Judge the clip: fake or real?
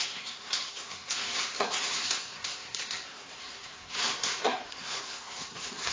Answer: fake